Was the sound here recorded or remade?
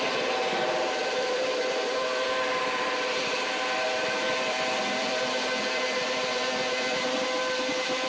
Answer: remade